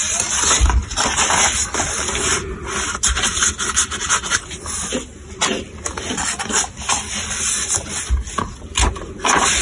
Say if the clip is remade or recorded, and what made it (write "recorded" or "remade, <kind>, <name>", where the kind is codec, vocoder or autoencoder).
recorded